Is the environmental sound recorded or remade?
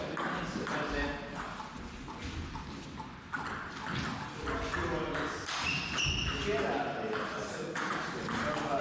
recorded